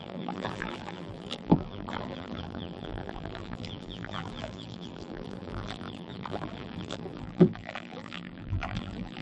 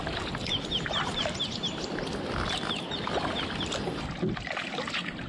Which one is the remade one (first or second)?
first